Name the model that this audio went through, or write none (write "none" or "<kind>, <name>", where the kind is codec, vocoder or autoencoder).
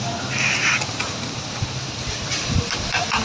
none